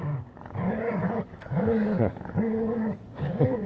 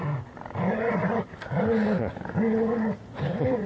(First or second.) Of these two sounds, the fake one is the first